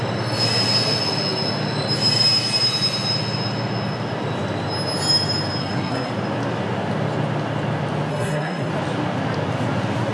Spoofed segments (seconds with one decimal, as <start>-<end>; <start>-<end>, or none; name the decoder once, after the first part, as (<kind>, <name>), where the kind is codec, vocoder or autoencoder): 5.6-6.1 (codec, SNAC); 8.1-8.7